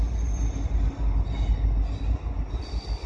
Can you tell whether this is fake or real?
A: real